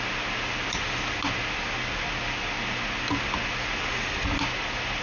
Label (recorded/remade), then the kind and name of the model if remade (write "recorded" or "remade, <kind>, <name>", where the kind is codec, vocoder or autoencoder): recorded